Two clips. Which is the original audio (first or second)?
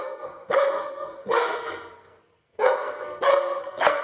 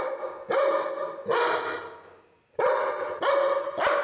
second